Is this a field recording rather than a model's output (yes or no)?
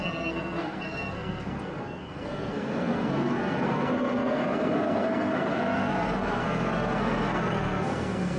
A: no